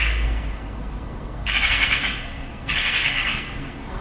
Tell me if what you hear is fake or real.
fake